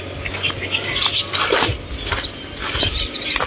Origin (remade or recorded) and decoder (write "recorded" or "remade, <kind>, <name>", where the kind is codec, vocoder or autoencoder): recorded